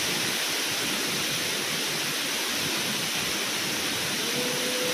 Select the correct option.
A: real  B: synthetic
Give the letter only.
A